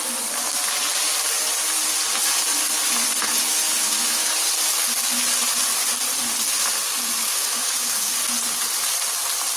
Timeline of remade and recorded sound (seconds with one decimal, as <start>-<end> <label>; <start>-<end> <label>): 0.0-3.5 recorded; 3.5-4.3 remade; 4.3-7.2 recorded; 7.2-8.1 remade; 8.1-9.6 recorded